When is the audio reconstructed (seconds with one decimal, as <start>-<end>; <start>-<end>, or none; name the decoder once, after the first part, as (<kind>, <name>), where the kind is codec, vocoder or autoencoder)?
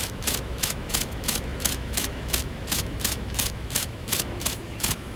0.0-5.2 (autoencoder, DAC-VAE)